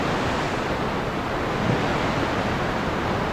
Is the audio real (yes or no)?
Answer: yes